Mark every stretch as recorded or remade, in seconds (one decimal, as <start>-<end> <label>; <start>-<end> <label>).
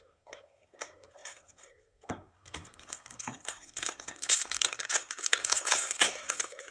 0.0-6.7 remade